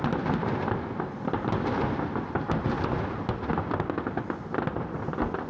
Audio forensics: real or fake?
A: real